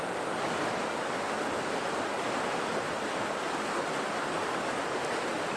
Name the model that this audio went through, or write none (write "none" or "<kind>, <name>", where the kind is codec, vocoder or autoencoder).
none